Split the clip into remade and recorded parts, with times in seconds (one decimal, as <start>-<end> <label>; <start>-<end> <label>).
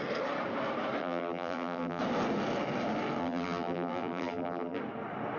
0.0-1.0 recorded; 1.0-2.0 remade; 2.0-3.2 recorded; 3.2-4.8 remade; 4.8-5.4 recorded